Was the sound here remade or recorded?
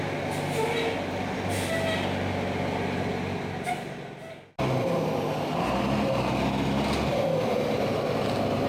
recorded